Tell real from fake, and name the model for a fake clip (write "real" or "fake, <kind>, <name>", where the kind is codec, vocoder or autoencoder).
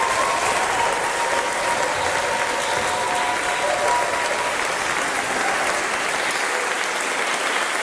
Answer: real